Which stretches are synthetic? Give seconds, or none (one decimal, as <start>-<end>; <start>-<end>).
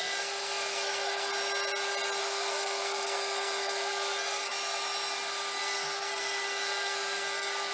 0.0-1.3; 2.2-4.5; 5.6-7.7